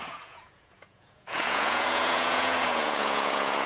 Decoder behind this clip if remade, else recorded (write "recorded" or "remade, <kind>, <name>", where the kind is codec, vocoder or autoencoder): remade, vocoder, Vocos